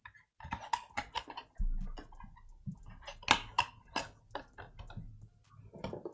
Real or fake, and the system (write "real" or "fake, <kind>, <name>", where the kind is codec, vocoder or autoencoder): real